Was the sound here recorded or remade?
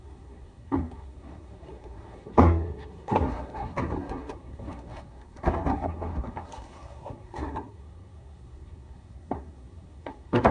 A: remade